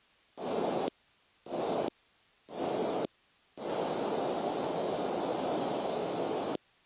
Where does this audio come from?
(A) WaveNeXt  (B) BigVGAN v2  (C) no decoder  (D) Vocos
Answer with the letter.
C